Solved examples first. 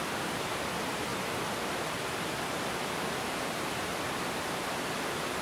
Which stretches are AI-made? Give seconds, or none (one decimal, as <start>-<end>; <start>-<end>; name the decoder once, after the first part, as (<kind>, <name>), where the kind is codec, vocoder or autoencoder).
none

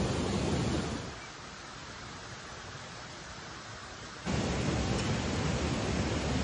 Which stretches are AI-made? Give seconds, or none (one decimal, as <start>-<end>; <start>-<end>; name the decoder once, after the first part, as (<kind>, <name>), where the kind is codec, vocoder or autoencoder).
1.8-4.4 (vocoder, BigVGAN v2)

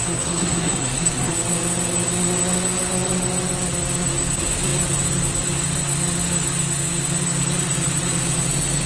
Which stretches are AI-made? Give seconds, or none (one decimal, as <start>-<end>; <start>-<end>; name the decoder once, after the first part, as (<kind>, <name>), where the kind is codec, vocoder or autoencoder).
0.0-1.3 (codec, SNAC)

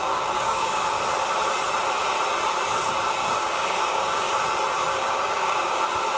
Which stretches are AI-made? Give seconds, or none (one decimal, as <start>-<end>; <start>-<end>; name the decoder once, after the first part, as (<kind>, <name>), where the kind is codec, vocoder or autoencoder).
0.0-1.0 (codec, DAC); 3.2-4.3; 4.9-5.8